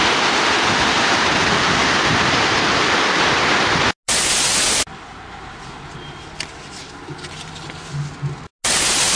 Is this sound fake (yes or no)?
no